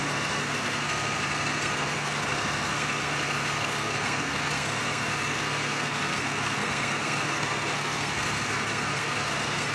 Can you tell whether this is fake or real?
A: fake